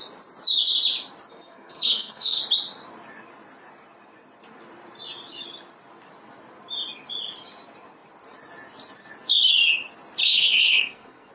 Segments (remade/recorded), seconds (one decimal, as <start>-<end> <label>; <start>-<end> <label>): 0.0-1.3 recorded; 1.3-2.4 remade; 2.4-10.2 recorded; 10.2-11.3 remade

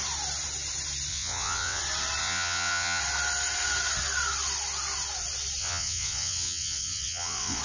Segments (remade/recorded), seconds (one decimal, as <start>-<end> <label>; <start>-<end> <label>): 0.0-1.1 recorded; 1.1-1.8 remade; 1.8-2.2 recorded; 2.2-3.0 remade; 3.0-5.6 recorded; 5.6-7.6 remade